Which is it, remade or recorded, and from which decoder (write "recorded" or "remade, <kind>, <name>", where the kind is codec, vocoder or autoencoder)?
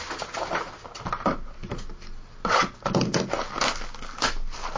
recorded